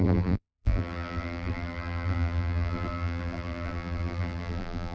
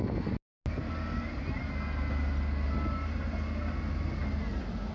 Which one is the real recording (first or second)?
second